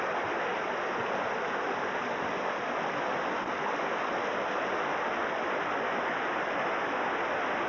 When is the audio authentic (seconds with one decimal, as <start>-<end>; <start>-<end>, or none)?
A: 0.0-7.7